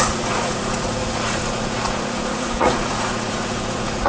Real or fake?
fake